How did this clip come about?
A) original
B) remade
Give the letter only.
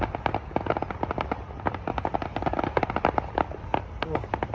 A